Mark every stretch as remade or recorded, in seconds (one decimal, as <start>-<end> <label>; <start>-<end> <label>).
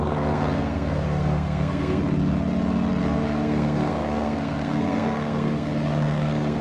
0.0-2.0 remade; 2.0-3.0 recorded; 3.0-6.6 remade